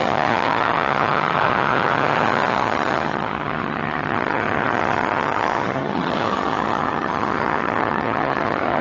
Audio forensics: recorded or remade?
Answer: remade